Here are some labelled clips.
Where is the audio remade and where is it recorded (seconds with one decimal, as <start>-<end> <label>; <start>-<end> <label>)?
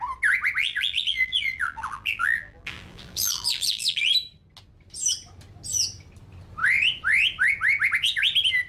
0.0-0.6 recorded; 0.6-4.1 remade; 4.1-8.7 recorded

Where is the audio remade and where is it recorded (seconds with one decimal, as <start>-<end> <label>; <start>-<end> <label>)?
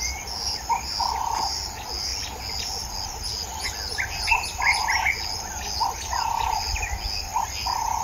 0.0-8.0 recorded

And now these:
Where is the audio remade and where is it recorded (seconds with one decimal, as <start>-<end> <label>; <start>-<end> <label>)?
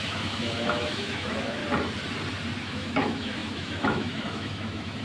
0.0-1.6 remade; 1.6-2.6 recorded; 2.6-5.0 remade